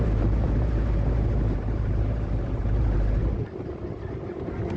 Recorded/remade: remade